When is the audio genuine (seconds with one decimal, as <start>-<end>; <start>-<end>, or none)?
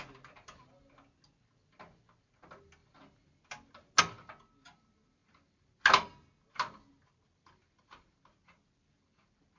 0.0-9.6